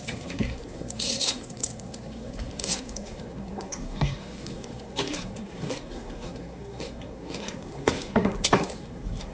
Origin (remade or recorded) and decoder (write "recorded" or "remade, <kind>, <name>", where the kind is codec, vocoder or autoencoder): remade, codec, SNAC